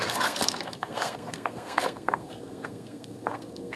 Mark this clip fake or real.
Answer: fake